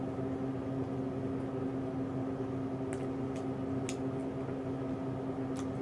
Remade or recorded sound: recorded